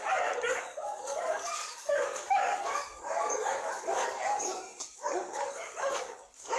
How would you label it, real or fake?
fake